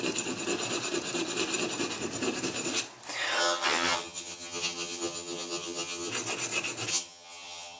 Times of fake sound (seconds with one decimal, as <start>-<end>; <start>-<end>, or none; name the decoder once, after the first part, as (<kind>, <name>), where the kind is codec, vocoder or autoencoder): 3.4-6.1 (vocoder, HiFi-GAN); 6.9-7.8